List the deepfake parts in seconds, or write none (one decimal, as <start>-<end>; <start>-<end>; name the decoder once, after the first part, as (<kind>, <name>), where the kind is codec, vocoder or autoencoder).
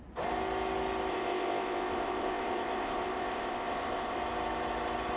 1.1-4.2 (codec, ZipCodec)